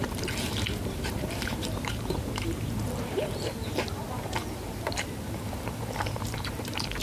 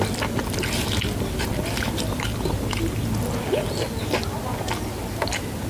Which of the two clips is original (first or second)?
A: second